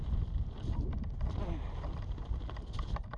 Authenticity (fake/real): real